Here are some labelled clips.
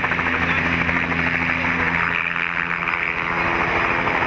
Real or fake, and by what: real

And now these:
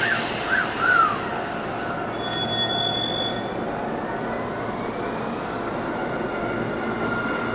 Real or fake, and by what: real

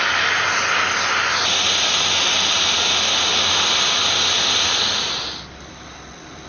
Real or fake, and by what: real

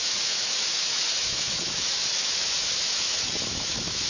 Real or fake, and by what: fake, autoencoder, DAC-VAE